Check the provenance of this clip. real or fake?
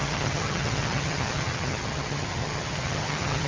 fake